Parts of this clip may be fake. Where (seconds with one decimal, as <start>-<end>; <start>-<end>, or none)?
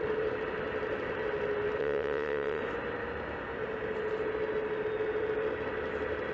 1.8-2.6